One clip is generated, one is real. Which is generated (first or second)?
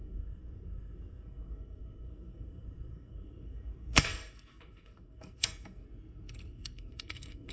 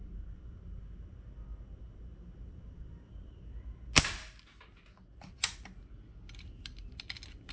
first